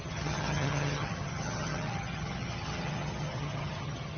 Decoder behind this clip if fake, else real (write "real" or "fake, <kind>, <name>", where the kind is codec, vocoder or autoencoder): fake, vocoder, HiFi-GAN